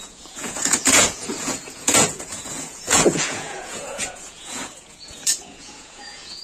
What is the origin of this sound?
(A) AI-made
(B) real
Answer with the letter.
A